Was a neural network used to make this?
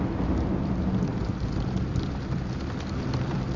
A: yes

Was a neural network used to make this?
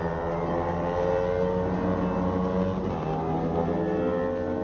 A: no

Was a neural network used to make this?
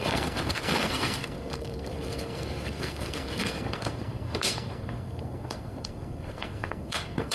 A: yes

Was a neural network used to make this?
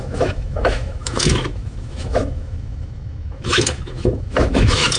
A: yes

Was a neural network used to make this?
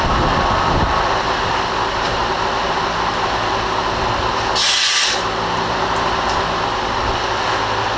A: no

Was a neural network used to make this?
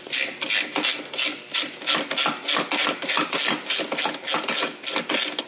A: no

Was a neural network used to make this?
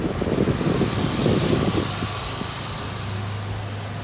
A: no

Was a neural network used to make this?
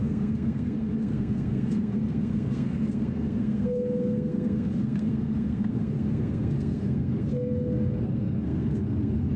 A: yes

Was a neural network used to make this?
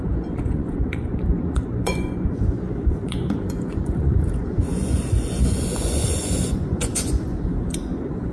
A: yes